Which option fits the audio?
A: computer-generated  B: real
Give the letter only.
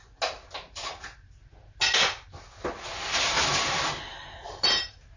B